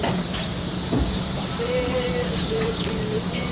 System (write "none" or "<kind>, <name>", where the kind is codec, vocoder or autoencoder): vocoder, BigVGAN v2